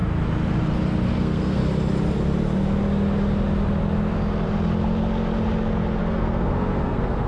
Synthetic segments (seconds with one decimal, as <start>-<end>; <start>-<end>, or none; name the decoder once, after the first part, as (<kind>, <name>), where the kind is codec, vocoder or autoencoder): 1.2-1.6 (codec, SNAC); 6.0-7.3